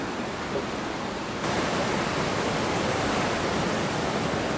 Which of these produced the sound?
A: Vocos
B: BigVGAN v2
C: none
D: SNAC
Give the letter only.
C